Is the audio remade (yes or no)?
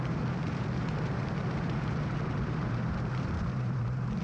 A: yes